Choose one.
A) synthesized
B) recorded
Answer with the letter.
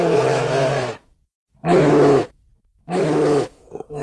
A